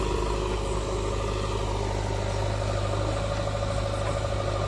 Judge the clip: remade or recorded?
recorded